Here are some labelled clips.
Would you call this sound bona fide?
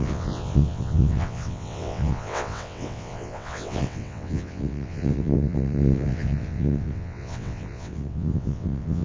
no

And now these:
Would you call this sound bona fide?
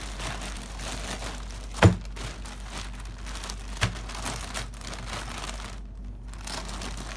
yes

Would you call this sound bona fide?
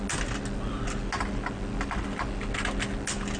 yes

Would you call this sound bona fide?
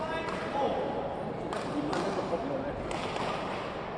yes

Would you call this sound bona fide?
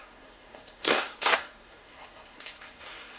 no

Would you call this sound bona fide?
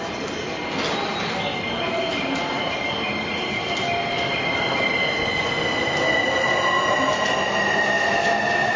yes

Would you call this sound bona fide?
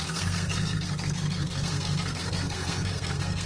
no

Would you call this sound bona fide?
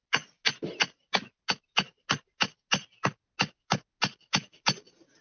yes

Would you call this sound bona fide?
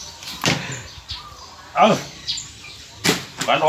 yes